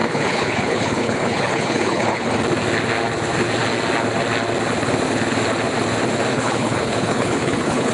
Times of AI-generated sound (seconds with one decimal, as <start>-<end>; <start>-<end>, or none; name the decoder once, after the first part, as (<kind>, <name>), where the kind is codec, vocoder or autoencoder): 0.0-2.3 (codec, HILCodec); 6.3-7.9

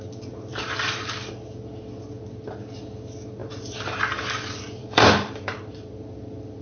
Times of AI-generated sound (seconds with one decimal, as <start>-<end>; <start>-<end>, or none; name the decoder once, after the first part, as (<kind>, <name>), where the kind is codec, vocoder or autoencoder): 0.5-1.1 (vocoder, BigVGAN v2); 3.4-4.0; 4.8-5.9

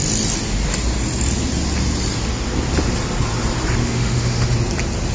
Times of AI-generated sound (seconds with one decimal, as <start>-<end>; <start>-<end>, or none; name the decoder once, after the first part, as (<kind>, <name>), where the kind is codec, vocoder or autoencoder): 3.8-4.5 (autoencoder, DAC-VAE)

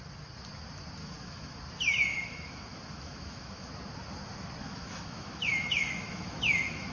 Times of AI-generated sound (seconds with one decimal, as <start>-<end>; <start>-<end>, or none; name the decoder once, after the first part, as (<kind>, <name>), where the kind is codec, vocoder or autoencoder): 1.0-1.6 (autoencoder, DAC-VAE); 2.1-3.7; 4.6-6.9